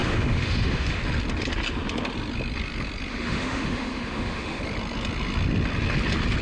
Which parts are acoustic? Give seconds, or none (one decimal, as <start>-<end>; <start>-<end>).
1.0-3.1; 4.6-6.4